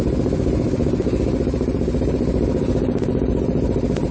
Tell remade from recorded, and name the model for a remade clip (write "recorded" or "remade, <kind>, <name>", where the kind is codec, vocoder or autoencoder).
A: recorded